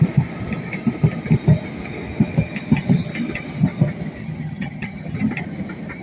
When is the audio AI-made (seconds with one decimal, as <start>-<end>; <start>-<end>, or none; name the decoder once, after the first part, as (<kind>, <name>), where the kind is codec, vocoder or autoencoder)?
4.2-5.3 (vocoder, HiFi-GAN)